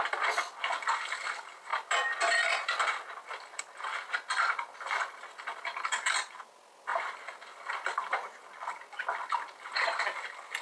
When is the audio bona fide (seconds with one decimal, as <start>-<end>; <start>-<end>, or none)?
0.0-10.6